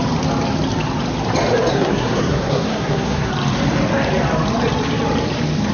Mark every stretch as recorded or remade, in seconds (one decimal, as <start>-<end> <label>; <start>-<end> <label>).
0.0-1.7 recorded; 1.7-3.3 remade; 3.3-5.7 recorded